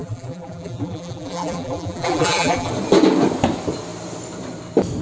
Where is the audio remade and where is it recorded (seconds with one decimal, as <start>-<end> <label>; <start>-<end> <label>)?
0.0-2.7 remade; 2.7-5.0 recorded